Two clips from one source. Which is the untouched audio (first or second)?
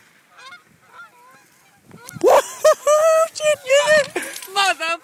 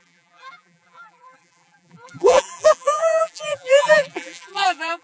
first